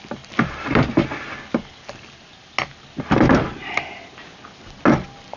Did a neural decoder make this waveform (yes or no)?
no